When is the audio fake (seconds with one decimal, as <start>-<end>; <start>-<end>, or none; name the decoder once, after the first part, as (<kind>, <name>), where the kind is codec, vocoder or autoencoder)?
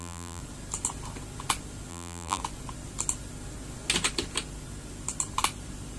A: 0.0-0.4 (vocoder, BigVGAN v2); 1.9-2.4